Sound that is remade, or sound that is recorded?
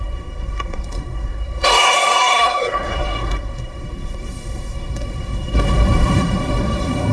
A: remade